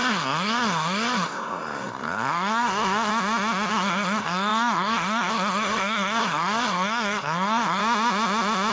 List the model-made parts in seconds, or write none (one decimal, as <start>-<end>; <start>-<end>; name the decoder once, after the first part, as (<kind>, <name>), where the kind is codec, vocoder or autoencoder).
0.0-3.1 (codec, SNAC); 3.7-7.8